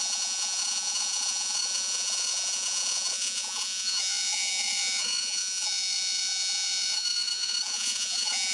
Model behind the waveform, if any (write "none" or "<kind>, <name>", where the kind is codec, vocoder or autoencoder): vocoder, Vocos